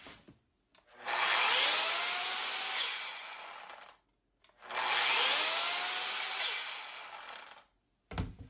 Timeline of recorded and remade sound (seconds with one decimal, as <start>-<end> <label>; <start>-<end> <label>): 0.0-2.2 recorded; 2.2-3.5 remade; 3.5-8.5 recorded